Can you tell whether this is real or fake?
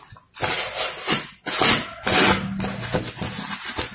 real